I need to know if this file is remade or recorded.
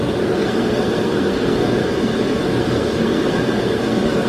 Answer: remade